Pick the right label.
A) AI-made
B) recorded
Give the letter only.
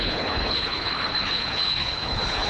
A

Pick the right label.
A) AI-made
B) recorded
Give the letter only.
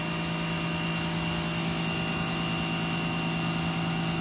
B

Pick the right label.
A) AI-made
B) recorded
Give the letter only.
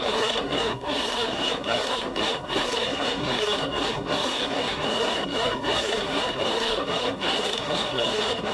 A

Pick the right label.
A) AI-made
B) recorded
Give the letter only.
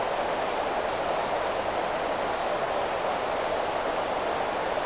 B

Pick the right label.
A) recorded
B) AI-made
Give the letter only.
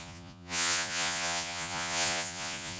B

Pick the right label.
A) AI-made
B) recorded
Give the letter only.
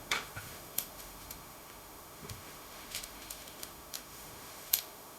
A